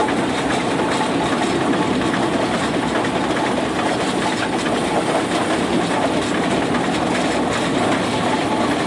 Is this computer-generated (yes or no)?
no